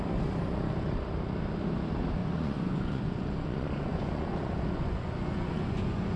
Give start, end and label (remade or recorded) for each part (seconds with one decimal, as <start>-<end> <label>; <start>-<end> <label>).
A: 0.0-2.2 recorded; 2.2-6.2 remade